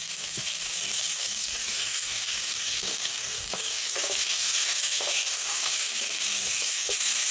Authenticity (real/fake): fake